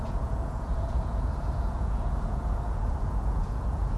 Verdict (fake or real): fake